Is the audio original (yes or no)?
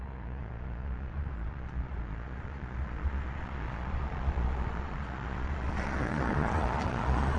no